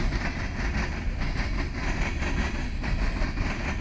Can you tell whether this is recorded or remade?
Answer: recorded